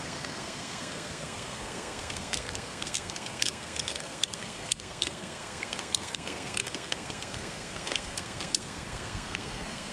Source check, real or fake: fake